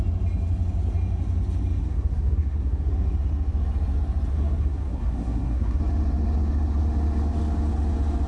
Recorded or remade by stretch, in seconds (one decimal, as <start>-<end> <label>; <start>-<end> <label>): 0.0-1.8 recorded; 1.8-2.9 remade; 2.9-4.3 recorded; 4.3-5.8 remade; 5.8-8.3 recorded